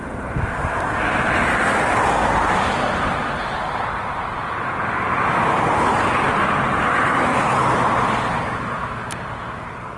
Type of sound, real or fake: real